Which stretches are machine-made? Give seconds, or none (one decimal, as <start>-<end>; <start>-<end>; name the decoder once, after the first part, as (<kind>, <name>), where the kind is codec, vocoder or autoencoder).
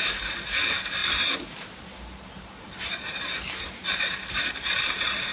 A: 0.0-5.3 (vocoder, BigVGAN v2)